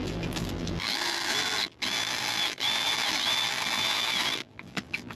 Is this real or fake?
fake